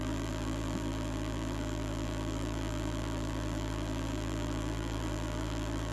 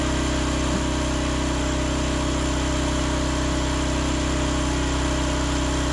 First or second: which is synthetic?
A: first